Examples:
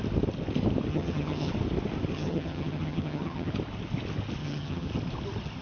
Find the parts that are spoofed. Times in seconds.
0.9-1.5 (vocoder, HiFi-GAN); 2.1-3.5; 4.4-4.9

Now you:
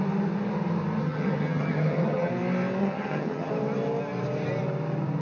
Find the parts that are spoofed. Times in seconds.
1.0-2.3 (vocoder, HiFi-GAN); 2.8-3.5

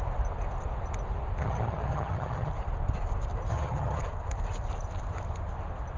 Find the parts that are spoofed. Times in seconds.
1.4-2.5 (vocoder, HiFi-GAN); 3.5-4.0

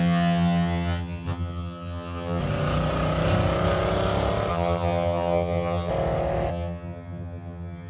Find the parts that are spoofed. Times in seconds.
0.0-2.4 (vocoder, HiFi-GAN); 4.5-5.9; 6.5-7.9

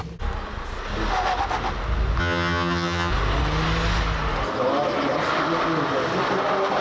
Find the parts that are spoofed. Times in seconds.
2.2-3.1 (vocoder, HiFi-GAN)